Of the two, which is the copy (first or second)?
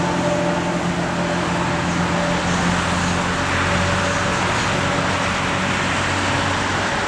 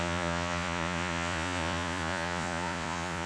second